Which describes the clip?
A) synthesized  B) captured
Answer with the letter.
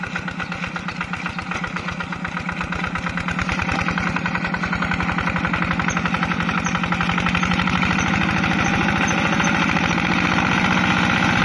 B